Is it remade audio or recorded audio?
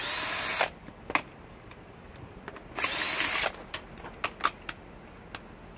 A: recorded